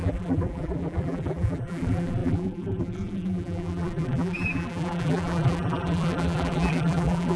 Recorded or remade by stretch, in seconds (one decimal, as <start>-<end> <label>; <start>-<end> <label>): 0.0-7.4 remade